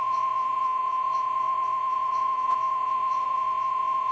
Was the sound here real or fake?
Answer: fake